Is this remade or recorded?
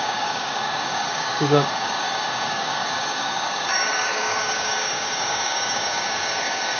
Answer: remade